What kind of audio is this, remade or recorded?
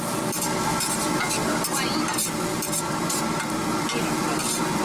recorded